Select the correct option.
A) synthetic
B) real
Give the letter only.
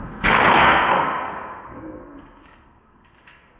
A